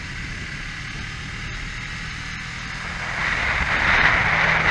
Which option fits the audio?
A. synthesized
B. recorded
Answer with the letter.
B